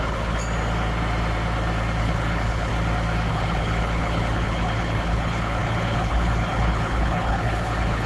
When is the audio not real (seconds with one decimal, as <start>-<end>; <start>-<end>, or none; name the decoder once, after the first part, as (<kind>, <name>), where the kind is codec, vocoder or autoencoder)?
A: 0.0-0.4 (codec, HILCodec); 2.0-2.7; 3.3-8.1